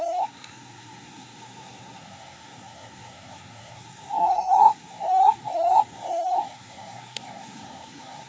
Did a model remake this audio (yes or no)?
yes